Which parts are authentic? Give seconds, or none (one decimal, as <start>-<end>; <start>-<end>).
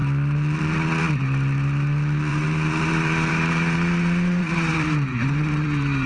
0.0-2.3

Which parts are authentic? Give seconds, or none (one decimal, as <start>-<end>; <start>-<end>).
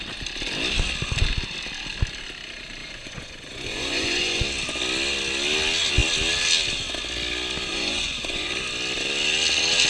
0.0-2.8; 4.4-7.7; 8.5-9.9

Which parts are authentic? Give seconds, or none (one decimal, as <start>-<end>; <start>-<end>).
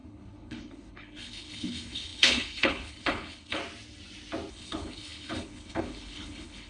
3.6-4.5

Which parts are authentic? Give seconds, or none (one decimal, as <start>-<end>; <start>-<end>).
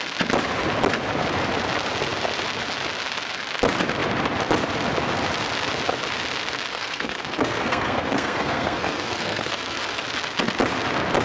0.0-6.7; 10.0-11.2